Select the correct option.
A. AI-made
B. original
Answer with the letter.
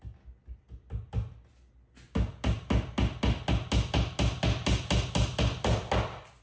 B